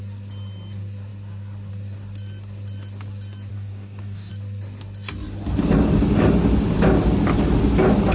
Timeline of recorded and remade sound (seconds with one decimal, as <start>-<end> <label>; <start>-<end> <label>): 0.0-3.5 recorded; 3.5-4.3 remade; 4.3-8.1 recorded